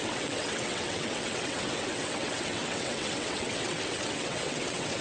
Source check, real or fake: fake